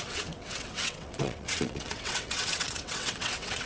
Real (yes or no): no